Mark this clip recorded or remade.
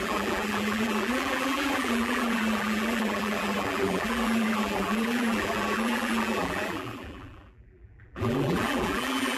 remade